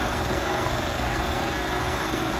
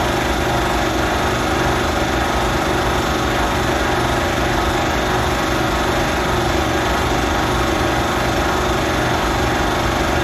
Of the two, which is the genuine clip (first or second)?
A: second